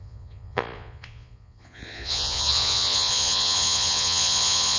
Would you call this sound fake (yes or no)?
yes